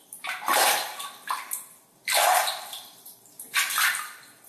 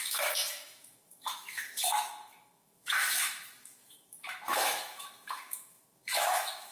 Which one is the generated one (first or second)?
second